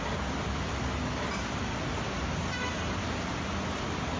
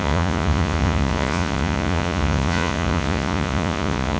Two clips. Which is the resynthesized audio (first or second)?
second